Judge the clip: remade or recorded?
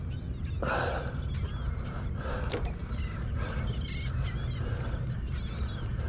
recorded